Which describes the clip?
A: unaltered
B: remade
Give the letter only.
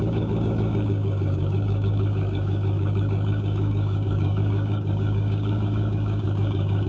B